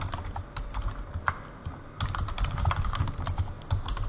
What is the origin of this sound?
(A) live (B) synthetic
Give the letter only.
A